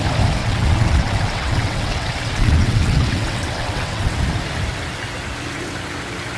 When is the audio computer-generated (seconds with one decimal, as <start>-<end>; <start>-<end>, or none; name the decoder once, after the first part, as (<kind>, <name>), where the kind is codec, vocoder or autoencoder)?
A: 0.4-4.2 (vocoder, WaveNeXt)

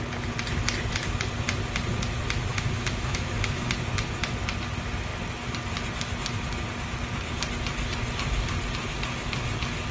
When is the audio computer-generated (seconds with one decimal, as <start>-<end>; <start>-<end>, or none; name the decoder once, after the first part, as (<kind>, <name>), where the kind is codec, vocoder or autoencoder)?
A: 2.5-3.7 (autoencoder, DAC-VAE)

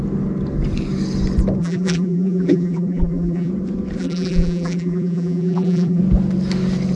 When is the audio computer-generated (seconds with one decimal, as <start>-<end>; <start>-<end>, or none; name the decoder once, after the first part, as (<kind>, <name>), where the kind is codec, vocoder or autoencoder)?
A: 1.6-3.5 (vocoder, BigVGAN v2); 4.0-6.0